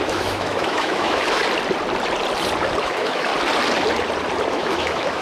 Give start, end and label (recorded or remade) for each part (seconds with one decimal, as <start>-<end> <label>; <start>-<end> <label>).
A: 0.0-1.4 remade; 1.4-2.8 recorded; 2.8-3.3 remade; 3.3-4.5 recorded; 4.5-5.2 remade